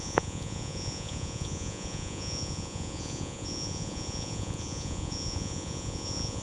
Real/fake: fake